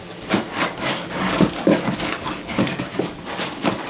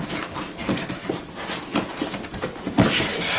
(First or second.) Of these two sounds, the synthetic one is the first